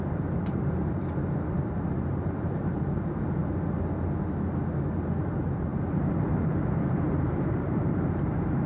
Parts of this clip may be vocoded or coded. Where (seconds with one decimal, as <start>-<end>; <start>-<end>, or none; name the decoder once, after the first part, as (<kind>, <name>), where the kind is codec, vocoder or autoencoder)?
0.0-3.4 (vocoder, BigVGAN v2); 5.2-8.7